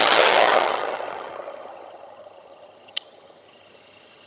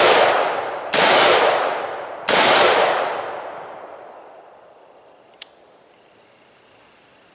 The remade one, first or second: first